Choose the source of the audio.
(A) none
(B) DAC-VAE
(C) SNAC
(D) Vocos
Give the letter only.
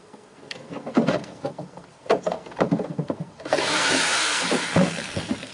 C